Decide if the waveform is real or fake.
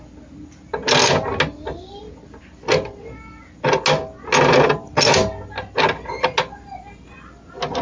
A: real